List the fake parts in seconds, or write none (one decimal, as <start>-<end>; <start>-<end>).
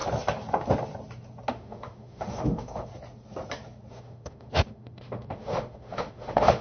1.5-2.9; 3.9-6.6